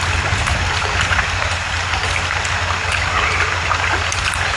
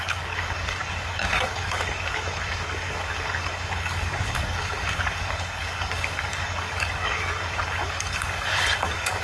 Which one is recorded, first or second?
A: first